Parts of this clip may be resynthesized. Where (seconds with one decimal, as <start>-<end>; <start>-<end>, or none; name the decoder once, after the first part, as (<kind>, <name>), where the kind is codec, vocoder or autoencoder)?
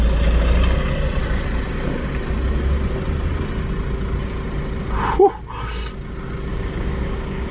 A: 6.5-7.5 (codec, DAC)